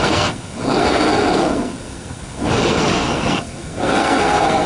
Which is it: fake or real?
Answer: fake